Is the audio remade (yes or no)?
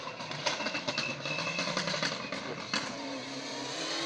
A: no